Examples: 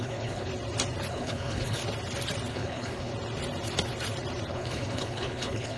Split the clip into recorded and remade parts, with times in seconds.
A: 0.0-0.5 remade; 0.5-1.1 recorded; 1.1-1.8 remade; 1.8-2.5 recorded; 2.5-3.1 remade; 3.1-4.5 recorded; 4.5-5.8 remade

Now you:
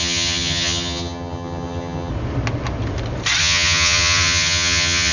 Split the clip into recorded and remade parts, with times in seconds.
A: 0.0-2.1 remade; 2.1-3.4 recorded; 3.4-5.1 remade